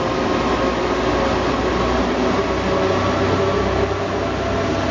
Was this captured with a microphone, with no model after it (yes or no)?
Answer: yes